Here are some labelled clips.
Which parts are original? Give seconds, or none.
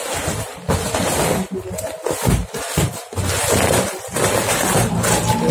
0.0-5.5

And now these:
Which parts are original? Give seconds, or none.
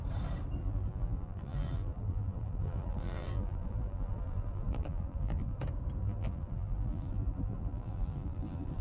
0.0-0.6; 5.6-6.0